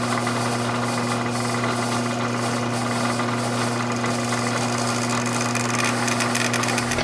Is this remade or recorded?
recorded